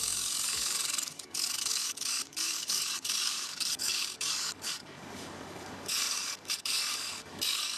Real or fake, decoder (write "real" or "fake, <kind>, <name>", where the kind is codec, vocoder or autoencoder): fake, codec, DAC